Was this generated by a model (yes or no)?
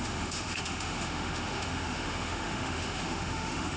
yes